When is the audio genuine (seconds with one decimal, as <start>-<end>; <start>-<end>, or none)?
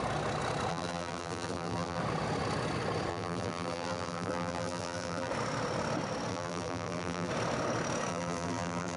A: 0.0-0.7; 2.0-3.1; 5.3-6.3; 7.3-8.1